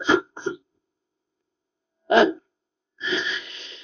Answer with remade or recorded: remade